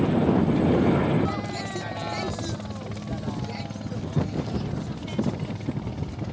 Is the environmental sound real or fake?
real